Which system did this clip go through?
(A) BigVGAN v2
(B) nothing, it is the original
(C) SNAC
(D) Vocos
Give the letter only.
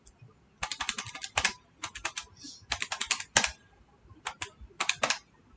B